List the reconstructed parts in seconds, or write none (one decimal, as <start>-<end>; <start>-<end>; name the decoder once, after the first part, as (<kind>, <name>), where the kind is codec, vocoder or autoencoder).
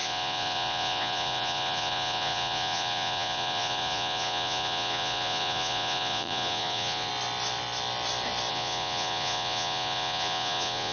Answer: 0.0-7.1 (vocoder, Vocos); 8.5-10.9